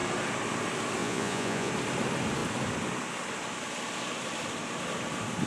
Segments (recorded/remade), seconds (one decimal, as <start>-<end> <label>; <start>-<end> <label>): 0.0-1.0 recorded; 1.0-1.7 remade; 1.7-5.5 recorded